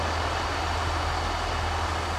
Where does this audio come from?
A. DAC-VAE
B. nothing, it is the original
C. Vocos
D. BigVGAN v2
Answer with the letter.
B